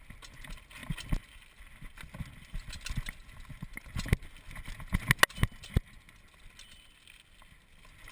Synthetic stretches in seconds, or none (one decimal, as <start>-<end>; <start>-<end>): none